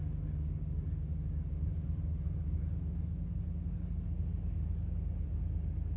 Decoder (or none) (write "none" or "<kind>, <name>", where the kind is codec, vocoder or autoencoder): none